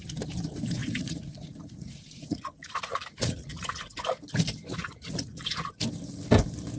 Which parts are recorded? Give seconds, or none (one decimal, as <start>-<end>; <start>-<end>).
0.0-0.8; 3.8-4.8; 5.7-6.8